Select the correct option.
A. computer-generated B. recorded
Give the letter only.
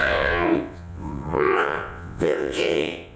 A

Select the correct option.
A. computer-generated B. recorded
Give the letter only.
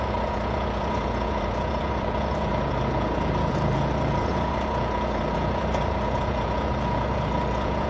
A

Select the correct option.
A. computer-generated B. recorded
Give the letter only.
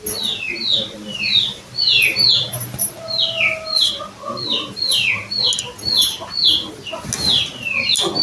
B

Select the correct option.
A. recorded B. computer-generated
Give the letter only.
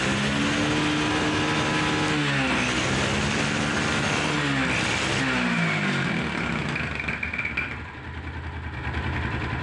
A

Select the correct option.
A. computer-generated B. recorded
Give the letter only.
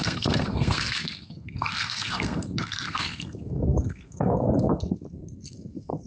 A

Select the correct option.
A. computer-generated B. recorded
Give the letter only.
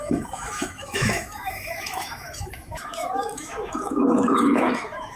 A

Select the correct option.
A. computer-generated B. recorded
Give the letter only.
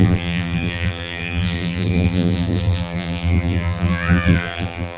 A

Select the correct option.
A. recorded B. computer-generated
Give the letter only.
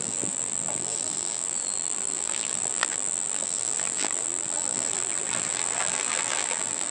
B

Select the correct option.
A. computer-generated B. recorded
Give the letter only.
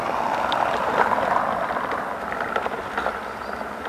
B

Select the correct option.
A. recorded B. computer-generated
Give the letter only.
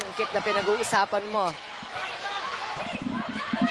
B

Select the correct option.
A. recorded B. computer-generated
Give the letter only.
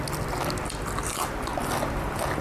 B